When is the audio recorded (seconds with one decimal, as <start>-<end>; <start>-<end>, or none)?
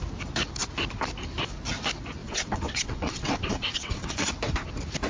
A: 0.0-2.2; 4.3-5.1